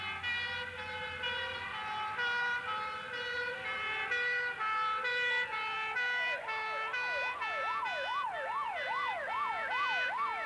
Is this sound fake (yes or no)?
no